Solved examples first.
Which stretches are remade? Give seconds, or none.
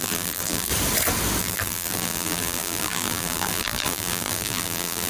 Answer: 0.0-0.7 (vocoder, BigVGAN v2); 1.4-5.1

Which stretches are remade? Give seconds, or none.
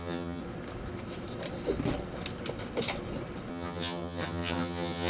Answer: 0.0-0.4 (vocoder, HiFi-GAN); 3.5-5.1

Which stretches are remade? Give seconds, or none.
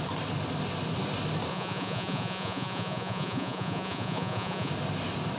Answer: 1.5-4.7 (vocoder, Vocos)